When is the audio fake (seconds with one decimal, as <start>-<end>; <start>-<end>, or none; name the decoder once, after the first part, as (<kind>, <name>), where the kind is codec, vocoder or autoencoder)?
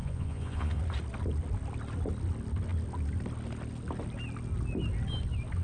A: 0.0-0.8 (vocoder, Vocos)